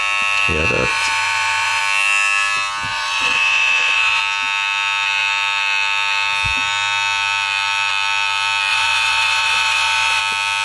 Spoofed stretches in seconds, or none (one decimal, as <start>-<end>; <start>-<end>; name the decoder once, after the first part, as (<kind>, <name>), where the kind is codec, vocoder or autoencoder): 0.9-1.8 (vocoder, Vocos); 2.9-4.2; 8.7-10.2

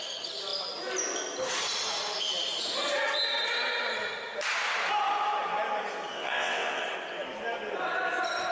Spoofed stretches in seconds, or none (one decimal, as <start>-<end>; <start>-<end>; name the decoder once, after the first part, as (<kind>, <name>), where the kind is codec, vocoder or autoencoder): 6.1-6.8 (vocoder, WaveNeXt)

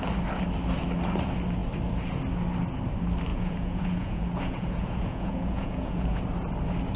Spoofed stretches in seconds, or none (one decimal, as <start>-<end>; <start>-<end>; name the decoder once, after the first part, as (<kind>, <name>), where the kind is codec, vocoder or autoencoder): 3.3-6.2 (vocoder, Vocos)

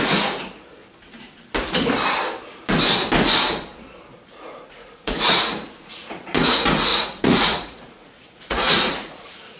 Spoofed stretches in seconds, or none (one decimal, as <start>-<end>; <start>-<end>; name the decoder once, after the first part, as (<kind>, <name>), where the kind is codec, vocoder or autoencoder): 0.0-0.8 (vocoder, Vocos); 4.3-5.5; 6.1-9.6

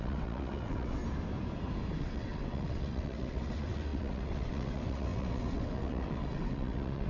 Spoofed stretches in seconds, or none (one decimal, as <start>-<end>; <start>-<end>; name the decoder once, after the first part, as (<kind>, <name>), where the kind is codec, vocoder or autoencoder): 0.0-1.0 (vocoder, WaveNeXt); 2.0-7.1

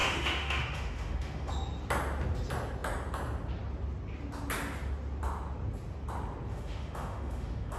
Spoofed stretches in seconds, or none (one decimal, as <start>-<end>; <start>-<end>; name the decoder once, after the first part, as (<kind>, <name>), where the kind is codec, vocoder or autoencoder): 0.0-1.5 (autoencoder, DAC-VAE); 6.5-7.8